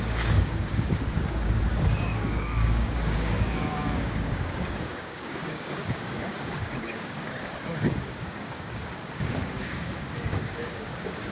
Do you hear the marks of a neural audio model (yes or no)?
yes